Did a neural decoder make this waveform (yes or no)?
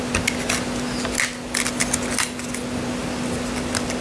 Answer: no